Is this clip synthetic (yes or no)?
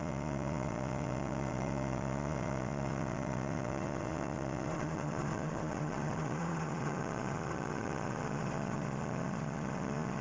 yes